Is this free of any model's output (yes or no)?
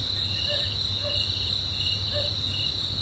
yes